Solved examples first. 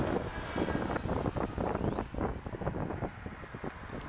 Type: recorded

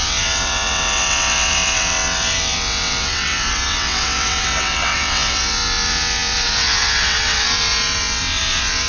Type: remade